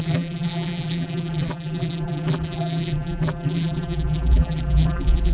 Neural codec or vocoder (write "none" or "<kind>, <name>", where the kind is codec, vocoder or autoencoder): vocoder, BigVGAN v2